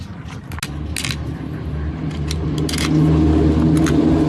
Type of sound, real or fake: real